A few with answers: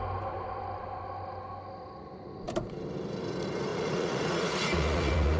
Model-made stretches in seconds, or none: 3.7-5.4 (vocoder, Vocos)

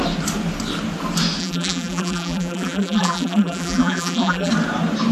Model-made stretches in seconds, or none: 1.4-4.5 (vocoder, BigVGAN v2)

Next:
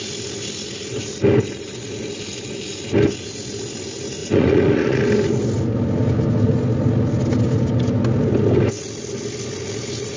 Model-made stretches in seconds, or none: 4.2-5.0 (vocoder, Vocos)

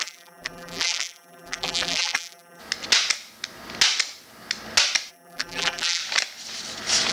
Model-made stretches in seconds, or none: 0.0-2.6 (vocoder, BigVGAN v2); 5.1-6.0

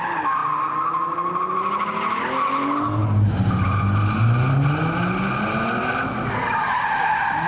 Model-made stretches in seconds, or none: none

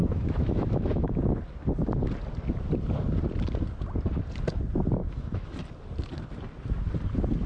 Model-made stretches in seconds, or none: 0.0-1.2 (autoencoder, DAC-VAE); 5.0-5.5